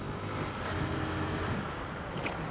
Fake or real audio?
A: real